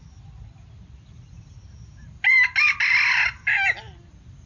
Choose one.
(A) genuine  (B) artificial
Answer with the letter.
A